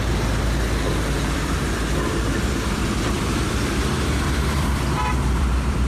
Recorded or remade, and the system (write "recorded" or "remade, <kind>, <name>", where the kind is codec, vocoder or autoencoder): remade, vocoder, BigVGAN v2